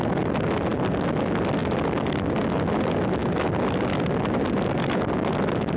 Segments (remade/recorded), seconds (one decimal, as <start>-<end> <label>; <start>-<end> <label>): 0.0-5.8 recorded